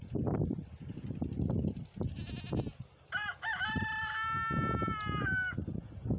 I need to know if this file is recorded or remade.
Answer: recorded